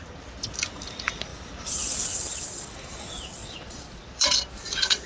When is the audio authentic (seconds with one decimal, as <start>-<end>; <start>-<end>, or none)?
0.0-3.4